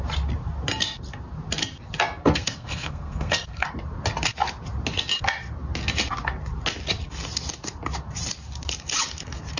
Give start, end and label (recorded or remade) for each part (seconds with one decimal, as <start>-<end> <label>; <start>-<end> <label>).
0.0-2.2 recorded; 2.2-3.7 remade; 3.7-9.6 recorded